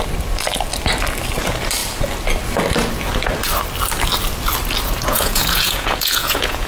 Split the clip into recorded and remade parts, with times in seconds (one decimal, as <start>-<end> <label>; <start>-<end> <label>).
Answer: 0.0-5.1 recorded; 5.1-6.7 remade